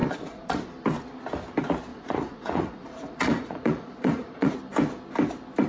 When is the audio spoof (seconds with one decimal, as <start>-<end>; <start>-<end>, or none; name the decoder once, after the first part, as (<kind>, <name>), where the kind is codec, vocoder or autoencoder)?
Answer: 0.0-0.6 (vocoder, Vocos); 1.9-4.5